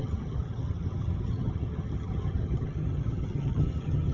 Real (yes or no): no